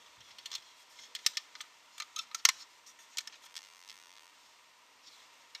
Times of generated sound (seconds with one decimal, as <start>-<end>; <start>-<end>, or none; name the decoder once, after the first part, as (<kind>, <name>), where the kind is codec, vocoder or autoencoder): 3.5-4.3 (vocoder, BigVGAN v2)